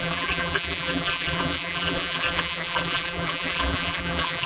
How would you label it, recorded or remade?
remade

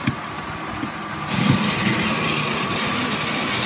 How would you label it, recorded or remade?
recorded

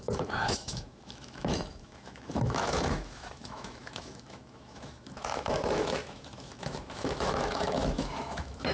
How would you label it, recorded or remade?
remade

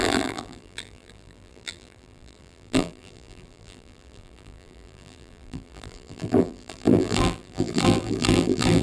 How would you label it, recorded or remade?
remade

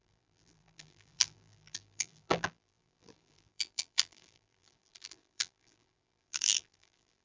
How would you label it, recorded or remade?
remade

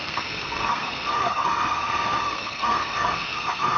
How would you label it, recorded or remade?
remade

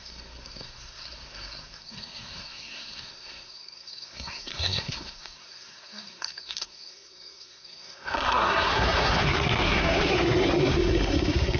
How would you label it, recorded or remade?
remade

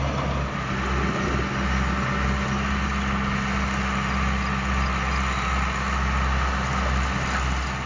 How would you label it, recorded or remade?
recorded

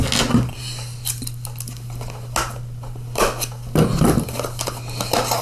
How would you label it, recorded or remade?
recorded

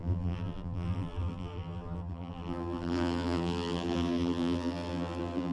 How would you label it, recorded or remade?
remade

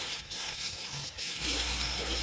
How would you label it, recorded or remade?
remade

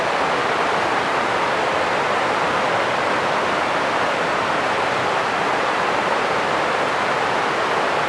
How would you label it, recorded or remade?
recorded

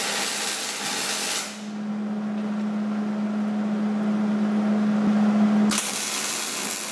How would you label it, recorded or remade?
recorded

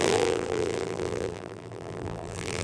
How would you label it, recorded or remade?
remade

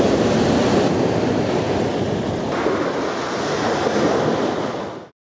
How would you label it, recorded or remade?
recorded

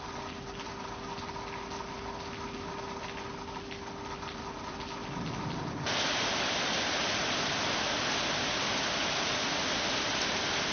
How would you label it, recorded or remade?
recorded